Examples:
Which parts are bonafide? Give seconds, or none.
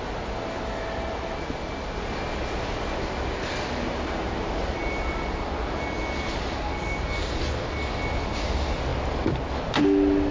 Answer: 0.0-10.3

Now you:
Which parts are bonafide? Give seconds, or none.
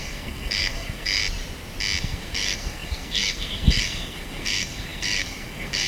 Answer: 1.2-2.0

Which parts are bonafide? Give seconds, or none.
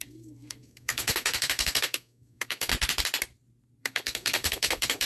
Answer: 2.7-3.8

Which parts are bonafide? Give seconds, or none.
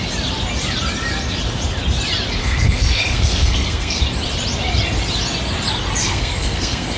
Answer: 0.0-2.4; 4.0-6.0